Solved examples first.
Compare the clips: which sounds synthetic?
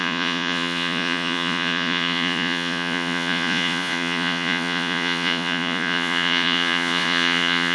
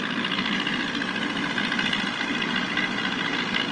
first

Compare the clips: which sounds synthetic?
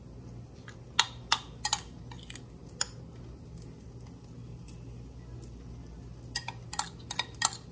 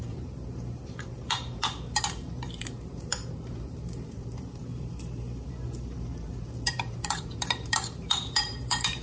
second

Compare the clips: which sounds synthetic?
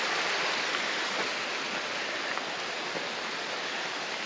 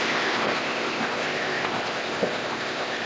second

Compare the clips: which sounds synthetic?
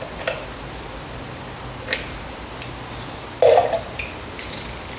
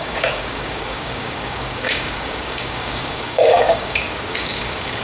second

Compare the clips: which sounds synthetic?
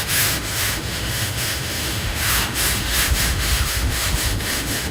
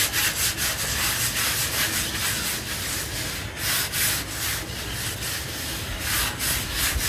first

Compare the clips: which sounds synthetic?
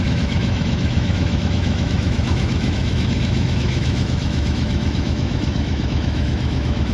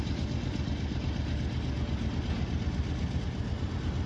first